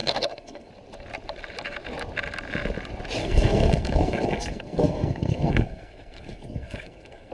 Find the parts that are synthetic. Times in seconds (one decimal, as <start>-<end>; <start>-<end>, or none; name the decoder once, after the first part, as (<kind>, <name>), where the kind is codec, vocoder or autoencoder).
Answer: 0.0-0.7 (codec, SNAC); 3.2-7.3